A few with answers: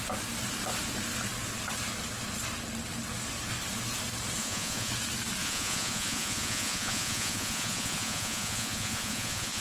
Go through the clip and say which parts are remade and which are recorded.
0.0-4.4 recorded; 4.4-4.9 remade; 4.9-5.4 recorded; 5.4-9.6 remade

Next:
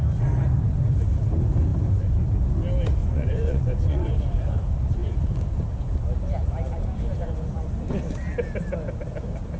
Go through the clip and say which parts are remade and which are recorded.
0.0-3.0 recorded; 3.0-4.1 remade; 4.1-9.6 recorded

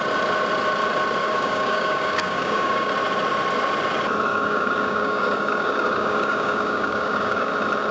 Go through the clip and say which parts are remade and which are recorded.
0.0-1.2 recorded; 1.2-2.9 remade; 2.9-4.3 recorded; 4.3-7.5 remade; 7.5-7.9 recorded

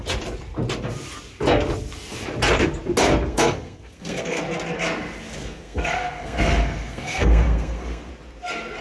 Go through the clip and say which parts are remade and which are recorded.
0.0-3.3 recorded; 3.3-4.4 remade; 4.4-5.4 recorded; 5.4-8.1 remade; 8.1-8.8 recorded

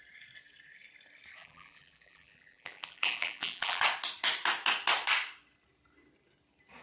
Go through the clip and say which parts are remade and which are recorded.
0.0-1.4 recorded; 1.4-3.8 remade; 3.8-6.8 recorded